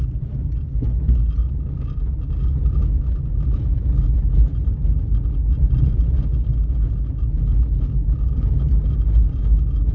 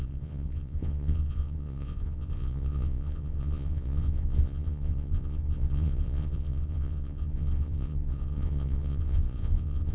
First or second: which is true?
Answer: first